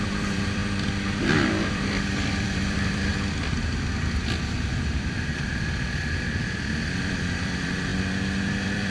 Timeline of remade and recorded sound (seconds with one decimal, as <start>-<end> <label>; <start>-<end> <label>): 0.0-0.6 remade; 0.6-1.7 recorded; 1.7-3.1 remade; 3.1-4.7 recorded; 4.7-7.9 remade; 7.9-8.4 recorded; 8.4-8.9 remade